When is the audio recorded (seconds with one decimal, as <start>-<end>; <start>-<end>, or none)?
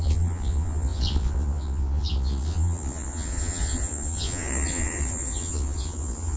none